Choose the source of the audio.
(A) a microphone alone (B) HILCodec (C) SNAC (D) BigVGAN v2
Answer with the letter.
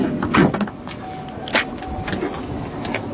A